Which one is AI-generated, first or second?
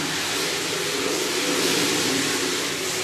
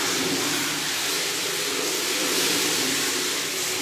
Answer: second